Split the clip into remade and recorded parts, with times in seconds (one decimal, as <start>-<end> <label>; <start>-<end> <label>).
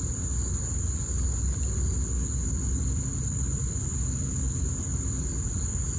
0.0-6.0 recorded